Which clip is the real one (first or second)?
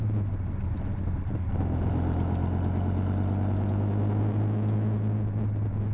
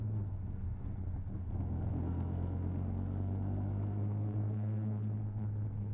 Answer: first